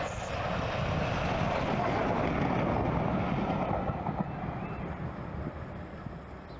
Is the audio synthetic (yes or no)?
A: no